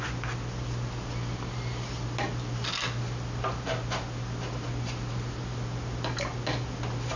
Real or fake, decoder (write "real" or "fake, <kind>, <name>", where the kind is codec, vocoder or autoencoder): real